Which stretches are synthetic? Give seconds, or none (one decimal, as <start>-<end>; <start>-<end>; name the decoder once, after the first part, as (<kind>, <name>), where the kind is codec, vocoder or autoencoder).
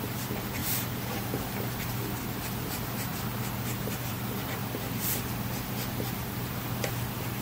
0.0-3.1 (vocoder, BigVGAN v2); 4.1-4.6; 5.7-7.4